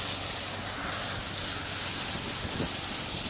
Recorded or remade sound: recorded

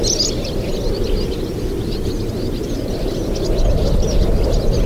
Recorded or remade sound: recorded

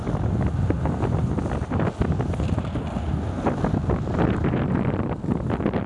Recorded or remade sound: recorded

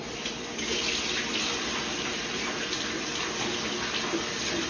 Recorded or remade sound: recorded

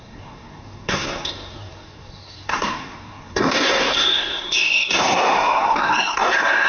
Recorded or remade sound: remade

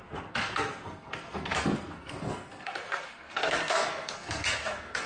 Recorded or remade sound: remade